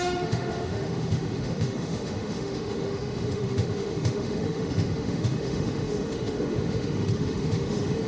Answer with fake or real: fake